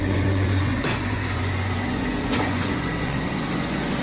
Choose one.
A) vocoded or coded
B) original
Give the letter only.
A